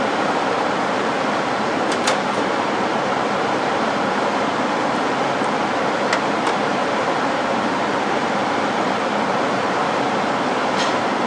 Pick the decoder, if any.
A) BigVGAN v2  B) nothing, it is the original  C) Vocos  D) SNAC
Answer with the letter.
A